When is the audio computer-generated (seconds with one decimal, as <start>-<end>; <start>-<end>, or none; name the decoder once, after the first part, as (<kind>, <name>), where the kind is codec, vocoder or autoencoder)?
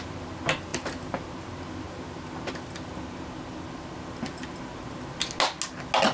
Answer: none